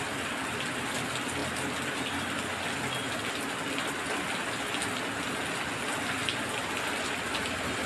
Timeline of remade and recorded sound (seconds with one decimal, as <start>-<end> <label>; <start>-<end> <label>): 0.0-7.9 recorded